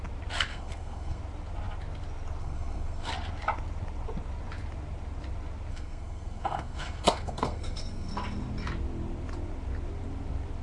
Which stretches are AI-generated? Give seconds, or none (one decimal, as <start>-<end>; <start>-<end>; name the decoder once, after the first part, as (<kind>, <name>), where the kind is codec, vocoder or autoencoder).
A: 0.5-1.2 (codec, SNAC); 2.4-3.1; 5.7-8.1